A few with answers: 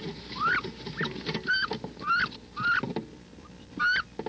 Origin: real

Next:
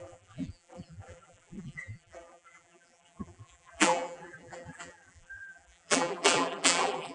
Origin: fake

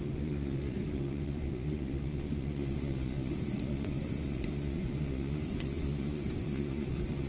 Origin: fake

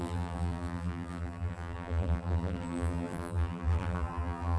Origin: fake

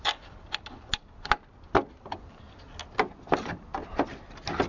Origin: real